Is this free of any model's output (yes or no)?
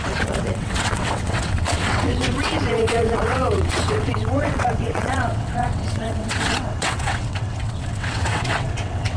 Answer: no